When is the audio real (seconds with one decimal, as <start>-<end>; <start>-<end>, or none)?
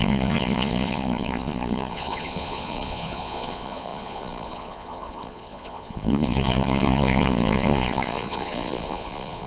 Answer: none